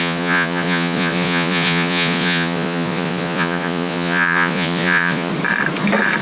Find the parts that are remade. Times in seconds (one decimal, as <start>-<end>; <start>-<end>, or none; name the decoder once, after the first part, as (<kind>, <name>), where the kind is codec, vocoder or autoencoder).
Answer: 0.0-5.3 (vocoder, Vocos)